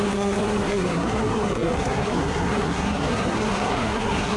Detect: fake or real fake